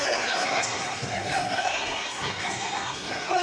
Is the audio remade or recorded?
remade